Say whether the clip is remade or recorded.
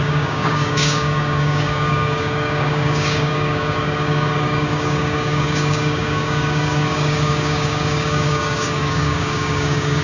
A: remade